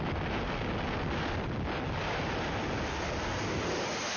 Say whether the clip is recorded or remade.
recorded